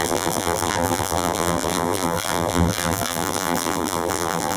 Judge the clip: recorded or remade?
remade